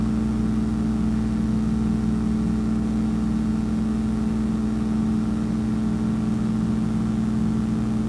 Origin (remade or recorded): recorded